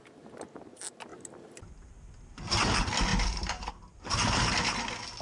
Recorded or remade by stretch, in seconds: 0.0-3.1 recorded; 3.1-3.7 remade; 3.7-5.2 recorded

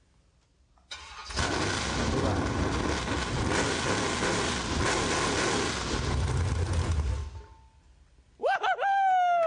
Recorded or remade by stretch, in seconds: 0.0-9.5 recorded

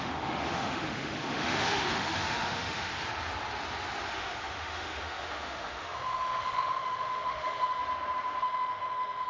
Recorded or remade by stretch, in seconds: 0.0-2.9 remade; 2.9-4.1 recorded; 4.1-7.8 remade; 7.8-8.4 recorded; 8.4-9.3 remade

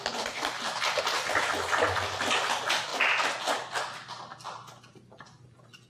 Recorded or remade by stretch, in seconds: 0.0-5.9 recorded

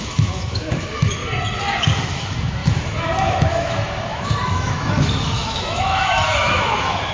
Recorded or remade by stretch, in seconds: 0.0-1.2 remade; 1.2-2.0 recorded; 2.0-7.1 remade

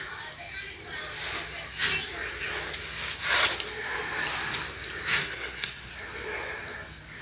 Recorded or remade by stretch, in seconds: 0.0-5.1 recorded; 5.1-5.9 remade; 5.9-7.2 recorded

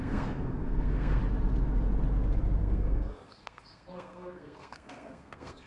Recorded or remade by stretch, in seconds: 0.0-1.2 remade; 1.2-2.6 recorded; 2.6-5.7 remade

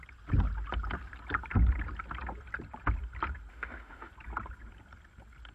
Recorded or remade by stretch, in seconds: 0.0-3.5 recorded; 3.5-4.1 remade; 4.1-5.5 recorded